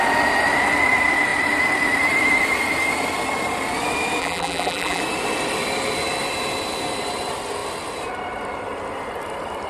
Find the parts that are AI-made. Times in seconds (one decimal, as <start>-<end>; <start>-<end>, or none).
4.2-5.0